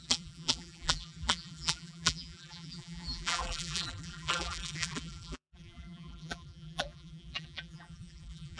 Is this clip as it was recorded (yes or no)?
no